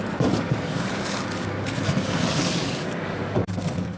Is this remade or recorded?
remade